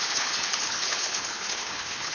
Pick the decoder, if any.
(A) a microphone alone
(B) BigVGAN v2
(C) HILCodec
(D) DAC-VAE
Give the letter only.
C